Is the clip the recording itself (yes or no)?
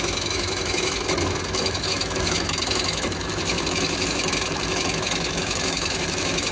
no